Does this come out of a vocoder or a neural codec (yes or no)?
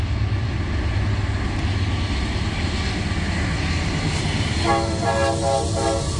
no